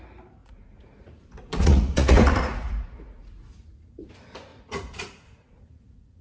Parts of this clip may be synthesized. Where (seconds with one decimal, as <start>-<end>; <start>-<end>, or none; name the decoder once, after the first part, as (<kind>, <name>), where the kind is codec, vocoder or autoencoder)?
0.4-4.1 (vocoder, Vocos); 4.5-6.2